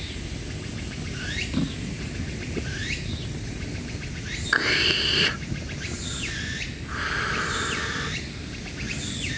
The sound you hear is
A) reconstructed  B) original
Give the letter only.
B